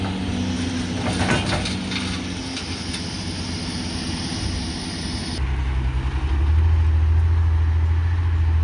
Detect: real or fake real